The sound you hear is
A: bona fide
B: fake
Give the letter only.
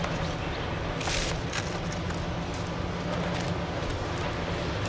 A